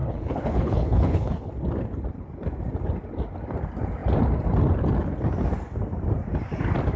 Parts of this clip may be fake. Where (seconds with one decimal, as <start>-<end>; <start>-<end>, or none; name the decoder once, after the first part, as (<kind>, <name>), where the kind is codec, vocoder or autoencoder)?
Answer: 0.0-1.5 (codec, HILCodec)